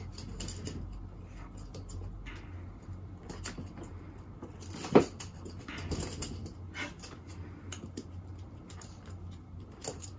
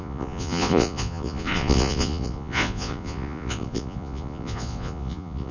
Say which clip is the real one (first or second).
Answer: first